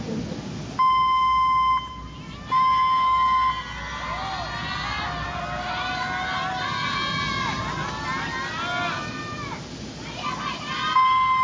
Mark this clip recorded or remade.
recorded